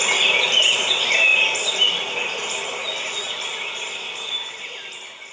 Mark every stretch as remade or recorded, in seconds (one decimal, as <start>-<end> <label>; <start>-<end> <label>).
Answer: 0.0-5.3 recorded